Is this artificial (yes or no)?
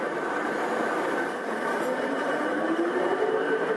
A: yes